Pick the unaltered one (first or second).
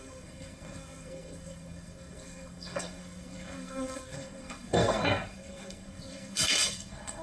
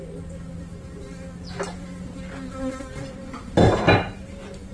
second